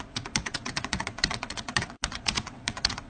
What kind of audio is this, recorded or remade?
remade